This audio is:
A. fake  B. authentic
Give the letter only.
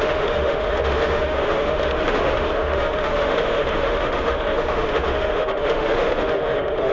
A